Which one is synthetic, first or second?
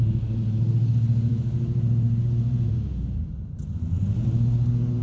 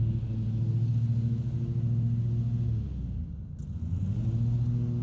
first